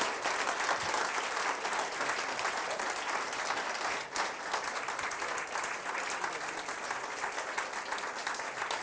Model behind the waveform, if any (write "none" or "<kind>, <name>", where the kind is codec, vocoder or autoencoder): none